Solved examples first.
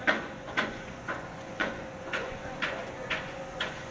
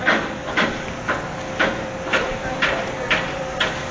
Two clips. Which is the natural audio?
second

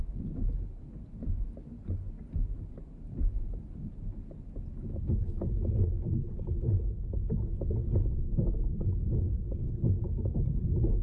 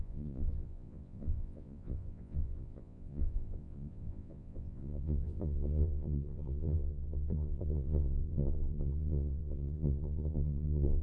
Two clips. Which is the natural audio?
first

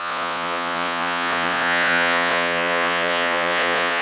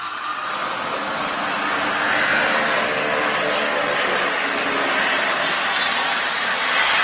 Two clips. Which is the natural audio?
second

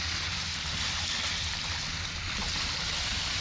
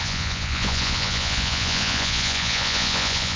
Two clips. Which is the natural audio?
first